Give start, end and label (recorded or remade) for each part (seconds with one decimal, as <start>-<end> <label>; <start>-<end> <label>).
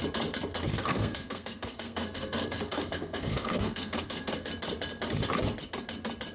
0.0-0.7 recorded; 0.7-4.5 remade; 4.5-6.3 recorded